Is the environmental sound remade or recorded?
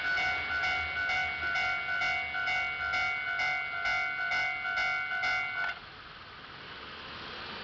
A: recorded